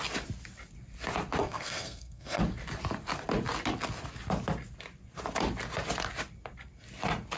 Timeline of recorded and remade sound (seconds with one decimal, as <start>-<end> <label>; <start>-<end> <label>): 0.0-1.4 recorded; 1.4-2.4 remade; 2.4-7.4 recorded